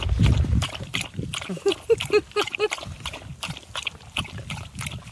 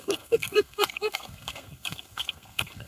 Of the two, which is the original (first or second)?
first